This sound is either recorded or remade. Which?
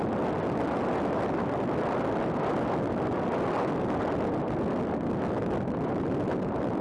recorded